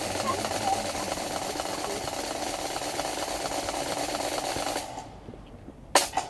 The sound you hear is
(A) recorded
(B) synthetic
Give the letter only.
A